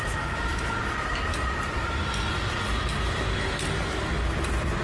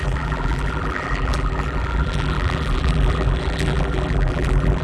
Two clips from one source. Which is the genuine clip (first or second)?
first